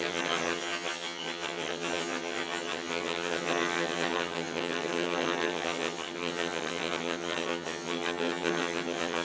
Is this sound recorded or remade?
remade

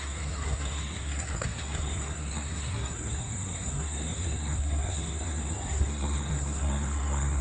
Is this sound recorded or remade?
remade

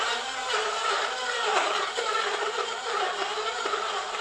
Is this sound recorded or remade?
remade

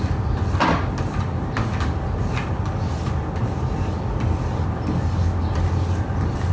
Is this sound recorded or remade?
recorded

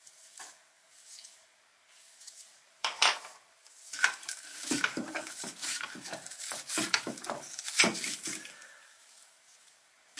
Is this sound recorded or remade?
remade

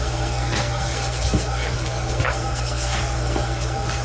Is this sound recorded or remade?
remade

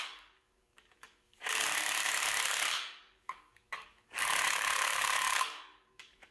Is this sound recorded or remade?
remade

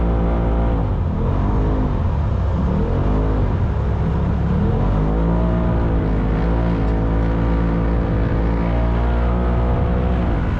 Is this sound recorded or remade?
recorded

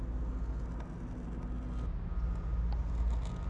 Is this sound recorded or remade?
recorded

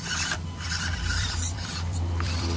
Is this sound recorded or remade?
remade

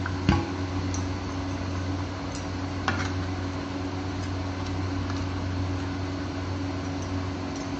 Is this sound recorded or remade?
recorded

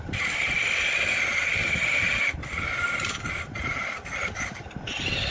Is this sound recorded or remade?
recorded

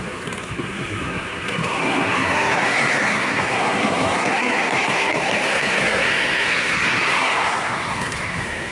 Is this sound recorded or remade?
remade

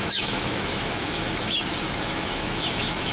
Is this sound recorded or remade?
remade